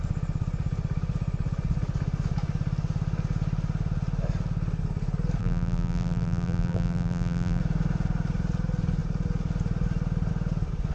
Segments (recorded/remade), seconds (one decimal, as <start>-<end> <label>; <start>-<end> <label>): 0.0-5.4 recorded; 5.4-7.6 remade; 7.6-10.9 recorded